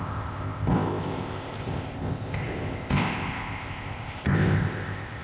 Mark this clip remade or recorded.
remade